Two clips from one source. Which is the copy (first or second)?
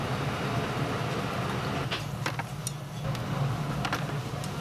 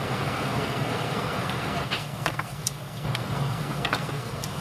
second